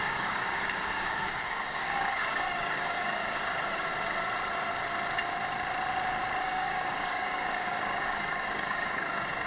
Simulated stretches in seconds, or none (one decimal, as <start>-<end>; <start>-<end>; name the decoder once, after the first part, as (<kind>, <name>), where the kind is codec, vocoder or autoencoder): 0.0-3.9 (codec, DAC); 6.4-9.5